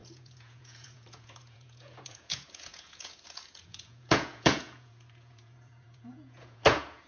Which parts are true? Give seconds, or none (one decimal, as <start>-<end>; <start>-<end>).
none